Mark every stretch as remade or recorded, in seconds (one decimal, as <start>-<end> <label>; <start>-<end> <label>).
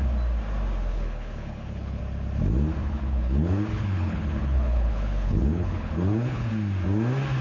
0.0-0.9 recorded; 0.9-2.0 remade; 2.0-2.8 recorded; 2.8-6.5 remade; 6.5-7.4 recorded